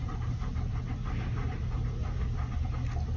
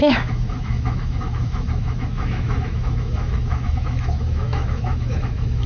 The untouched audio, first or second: first